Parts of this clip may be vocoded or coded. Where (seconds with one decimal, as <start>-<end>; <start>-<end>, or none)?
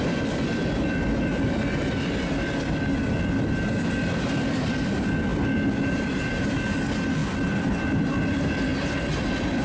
none